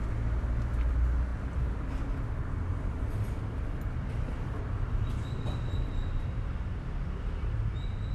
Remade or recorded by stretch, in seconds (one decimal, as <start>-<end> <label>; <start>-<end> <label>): 0.0-8.1 recorded